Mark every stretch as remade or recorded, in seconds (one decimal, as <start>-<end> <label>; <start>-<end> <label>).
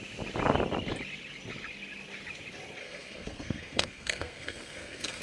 0.0-2.8 recorded; 2.8-5.2 remade